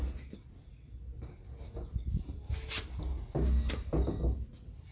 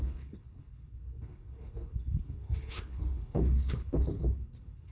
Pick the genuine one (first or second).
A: first